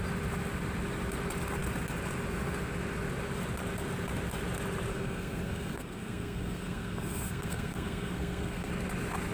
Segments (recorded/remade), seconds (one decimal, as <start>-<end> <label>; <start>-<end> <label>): 0.0-4.9 recorded; 4.9-8.7 remade; 8.7-9.3 recorded